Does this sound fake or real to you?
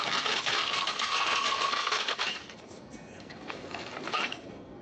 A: fake